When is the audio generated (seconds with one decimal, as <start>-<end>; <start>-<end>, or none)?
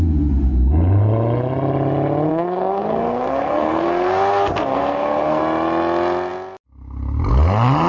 2.3-5.4